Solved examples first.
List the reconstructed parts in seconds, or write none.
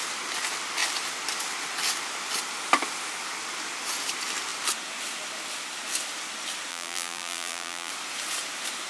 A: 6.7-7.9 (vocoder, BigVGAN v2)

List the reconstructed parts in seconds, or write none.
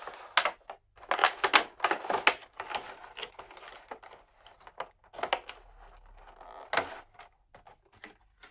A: none